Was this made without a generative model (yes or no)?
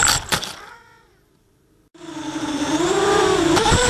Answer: no